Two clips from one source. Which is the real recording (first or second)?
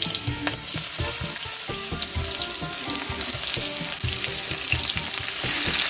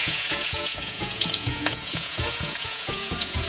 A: first